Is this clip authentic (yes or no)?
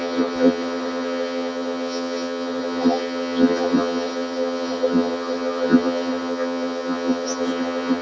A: no